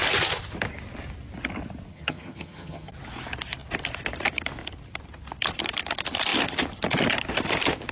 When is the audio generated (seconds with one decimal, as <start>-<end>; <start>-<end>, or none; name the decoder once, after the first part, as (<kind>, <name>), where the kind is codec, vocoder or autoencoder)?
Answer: 1.9-2.9 (vocoder, HiFi-GAN)